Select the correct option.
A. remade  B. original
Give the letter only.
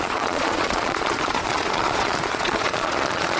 A